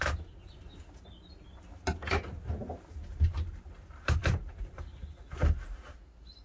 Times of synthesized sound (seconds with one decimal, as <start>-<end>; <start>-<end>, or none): none